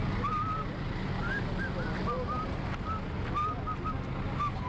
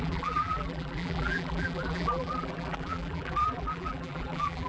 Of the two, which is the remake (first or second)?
second